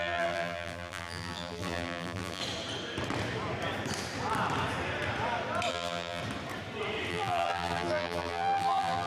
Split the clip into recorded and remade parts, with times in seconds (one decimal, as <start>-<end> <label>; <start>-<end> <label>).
0.0-2.4 remade; 2.4-5.7 recorded; 5.7-6.2 remade; 6.2-7.1 recorded; 7.1-9.1 remade